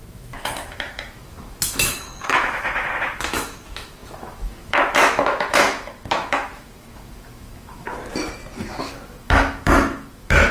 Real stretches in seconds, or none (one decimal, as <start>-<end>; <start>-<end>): 7.9-8.6